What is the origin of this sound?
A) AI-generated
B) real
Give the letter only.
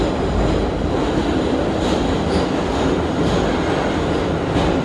B